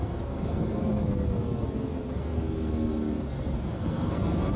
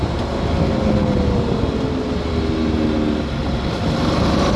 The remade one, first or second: first